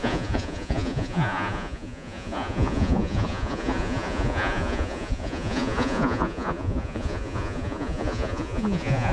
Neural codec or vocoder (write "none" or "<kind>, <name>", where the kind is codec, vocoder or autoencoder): vocoder, Vocos